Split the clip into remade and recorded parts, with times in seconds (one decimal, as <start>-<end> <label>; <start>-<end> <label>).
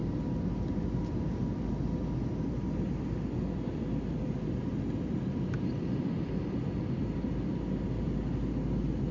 0.0-9.1 recorded